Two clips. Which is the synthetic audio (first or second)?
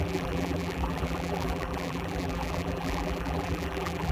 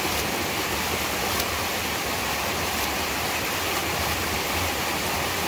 first